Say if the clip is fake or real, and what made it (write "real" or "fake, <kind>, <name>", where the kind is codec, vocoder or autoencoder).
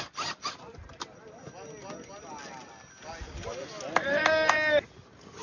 real